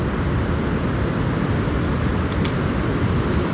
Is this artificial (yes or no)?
no